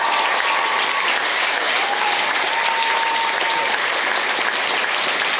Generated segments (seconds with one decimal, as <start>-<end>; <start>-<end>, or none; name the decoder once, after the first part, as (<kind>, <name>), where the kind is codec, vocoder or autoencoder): 1.3-2.3 (codec, DAC)